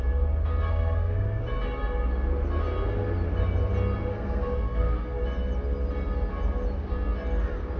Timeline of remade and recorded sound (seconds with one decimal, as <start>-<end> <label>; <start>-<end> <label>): 0.0-0.7 recorded; 0.7-1.4 remade; 1.4-4.1 recorded; 4.1-5.2 remade; 5.2-7.8 recorded